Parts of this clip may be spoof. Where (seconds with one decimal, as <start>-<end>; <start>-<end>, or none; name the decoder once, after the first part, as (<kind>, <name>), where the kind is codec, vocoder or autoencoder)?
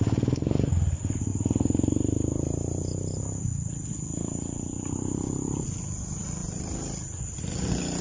none